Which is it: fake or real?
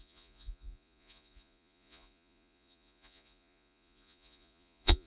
fake